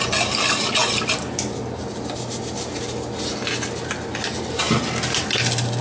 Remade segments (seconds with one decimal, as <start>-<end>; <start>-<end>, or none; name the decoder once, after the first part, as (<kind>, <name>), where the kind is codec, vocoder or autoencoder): none